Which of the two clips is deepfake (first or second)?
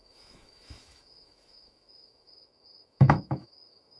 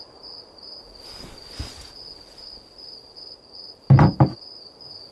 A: first